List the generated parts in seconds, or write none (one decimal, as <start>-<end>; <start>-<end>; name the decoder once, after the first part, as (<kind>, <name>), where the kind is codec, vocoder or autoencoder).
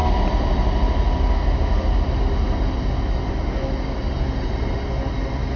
none